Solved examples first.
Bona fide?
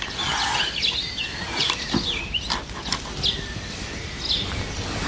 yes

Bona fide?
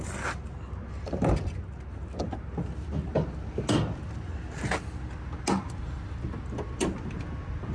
yes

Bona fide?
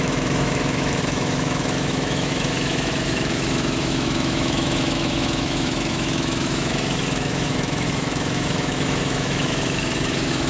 no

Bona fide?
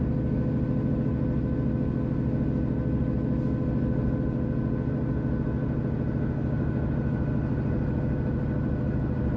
yes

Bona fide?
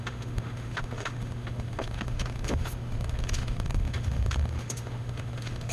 no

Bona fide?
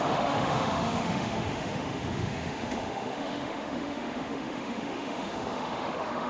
no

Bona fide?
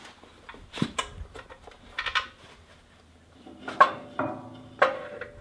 yes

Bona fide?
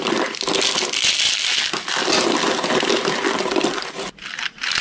yes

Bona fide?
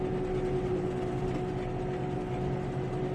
yes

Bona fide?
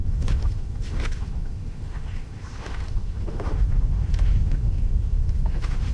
no